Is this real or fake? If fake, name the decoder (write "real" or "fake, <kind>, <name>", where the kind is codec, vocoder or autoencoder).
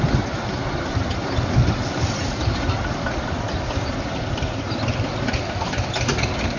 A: real